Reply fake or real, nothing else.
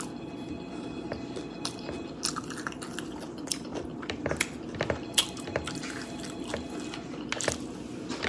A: real